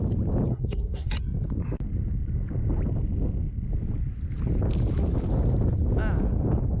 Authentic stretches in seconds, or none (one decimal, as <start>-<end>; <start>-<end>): 0.0-0.5; 1.1-6.8